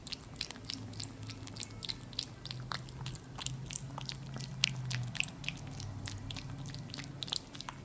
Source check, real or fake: real